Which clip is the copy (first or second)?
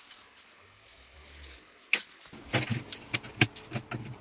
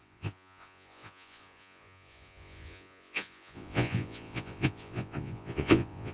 second